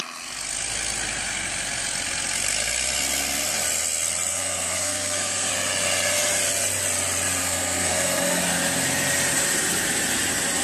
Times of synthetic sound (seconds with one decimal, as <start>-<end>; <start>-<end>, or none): 4.3-5.5; 7.4-8.4